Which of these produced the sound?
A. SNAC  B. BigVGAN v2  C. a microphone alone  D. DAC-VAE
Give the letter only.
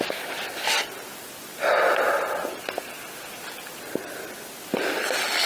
C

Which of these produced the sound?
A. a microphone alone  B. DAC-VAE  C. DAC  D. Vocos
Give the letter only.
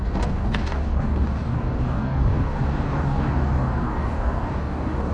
C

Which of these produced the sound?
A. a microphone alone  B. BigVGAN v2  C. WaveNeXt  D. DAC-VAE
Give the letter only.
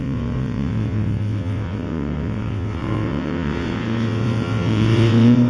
C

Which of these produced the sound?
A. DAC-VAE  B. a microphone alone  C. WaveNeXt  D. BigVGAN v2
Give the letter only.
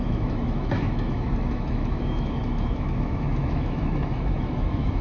A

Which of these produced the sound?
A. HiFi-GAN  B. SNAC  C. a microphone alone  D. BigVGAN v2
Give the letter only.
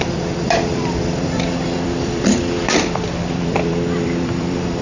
D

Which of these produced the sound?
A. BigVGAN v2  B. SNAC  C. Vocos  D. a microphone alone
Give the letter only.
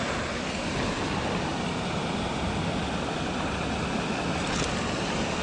D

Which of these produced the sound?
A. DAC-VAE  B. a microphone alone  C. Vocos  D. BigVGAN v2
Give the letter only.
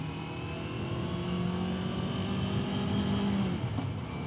B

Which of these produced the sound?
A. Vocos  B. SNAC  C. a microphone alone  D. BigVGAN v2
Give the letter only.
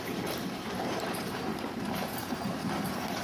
D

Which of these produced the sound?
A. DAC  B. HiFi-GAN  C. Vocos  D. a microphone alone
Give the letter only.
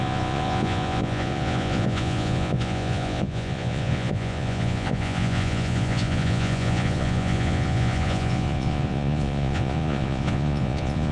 C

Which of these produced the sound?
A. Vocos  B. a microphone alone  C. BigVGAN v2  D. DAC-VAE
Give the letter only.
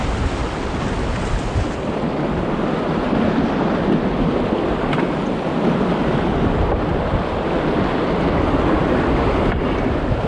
B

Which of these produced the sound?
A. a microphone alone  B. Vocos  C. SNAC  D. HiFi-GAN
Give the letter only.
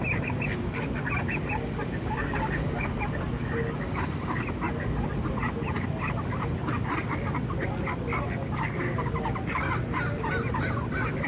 A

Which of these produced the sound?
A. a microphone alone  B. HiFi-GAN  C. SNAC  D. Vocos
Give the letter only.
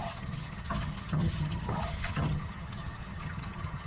B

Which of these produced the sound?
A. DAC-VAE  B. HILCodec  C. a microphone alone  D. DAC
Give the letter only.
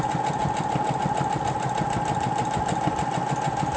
C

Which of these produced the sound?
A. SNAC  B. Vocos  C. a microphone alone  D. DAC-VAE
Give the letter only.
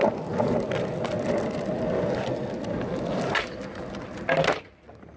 C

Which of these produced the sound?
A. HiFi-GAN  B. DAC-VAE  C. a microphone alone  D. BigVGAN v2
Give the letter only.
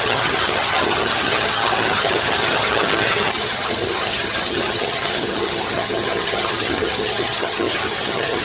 A